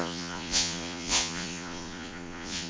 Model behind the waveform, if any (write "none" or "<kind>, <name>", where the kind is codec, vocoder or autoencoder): vocoder, Vocos